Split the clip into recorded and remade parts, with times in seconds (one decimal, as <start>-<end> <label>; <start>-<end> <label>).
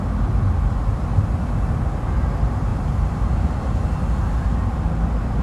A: 0.0-2.7 recorded; 2.7-3.6 remade; 3.6-5.4 recorded